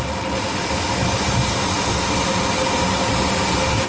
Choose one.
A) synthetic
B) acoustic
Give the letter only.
B